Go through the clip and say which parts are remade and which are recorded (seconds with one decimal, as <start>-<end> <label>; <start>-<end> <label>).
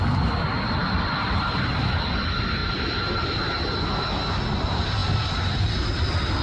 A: 0.0-0.8 recorded; 0.8-1.7 remade; 1.7-2.6 recorded; 2.6-3.8 remade; 3.8-6.4 recorded